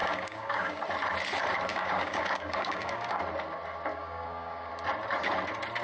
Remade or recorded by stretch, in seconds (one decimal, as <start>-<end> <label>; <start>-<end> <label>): 0.0-0.8 remade; 0.8-1.7 recorded; 1.7-3.2 remade; 3.2-3.9 recorded; 3.9-4.7 remade; 4.7-5.8 recorded